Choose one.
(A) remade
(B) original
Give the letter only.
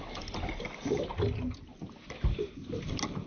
B